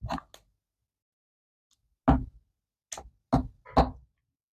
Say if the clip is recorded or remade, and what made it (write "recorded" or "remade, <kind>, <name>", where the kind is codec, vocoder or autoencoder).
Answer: recorded